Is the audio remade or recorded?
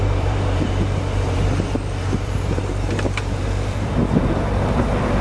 remade